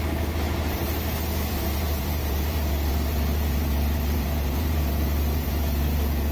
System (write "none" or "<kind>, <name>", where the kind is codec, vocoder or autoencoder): vocoder, BigVGAN v2